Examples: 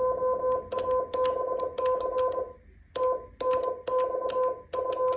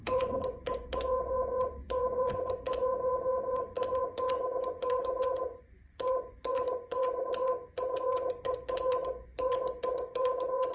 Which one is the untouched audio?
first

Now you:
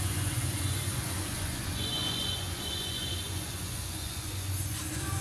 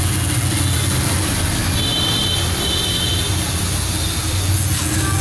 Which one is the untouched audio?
second